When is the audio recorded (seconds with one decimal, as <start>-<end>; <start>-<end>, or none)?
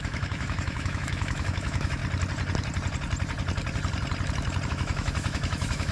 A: 2.0-4.7